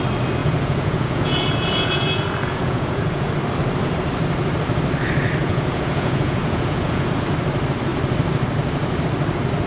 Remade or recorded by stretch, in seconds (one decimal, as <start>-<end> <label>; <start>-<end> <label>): 0.0-0.4 recorded; 0.4-3.3 remade; 3.3-5.4 recorded; 5.4-7.2 remade; 7.2-9.7 recorded